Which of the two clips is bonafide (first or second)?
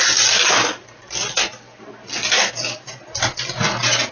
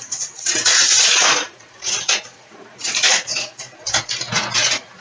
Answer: first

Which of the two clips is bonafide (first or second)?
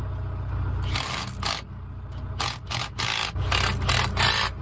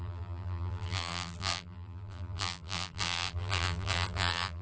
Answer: first